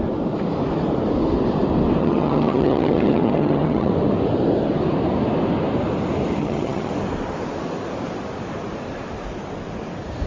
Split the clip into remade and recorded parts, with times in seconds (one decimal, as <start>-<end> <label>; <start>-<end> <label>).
0.0-2.0 recorded; 2.0-3.9 remade; 3.9-6.4 recorded; 6.4-6.9 remade; 6.9-10.3 recorded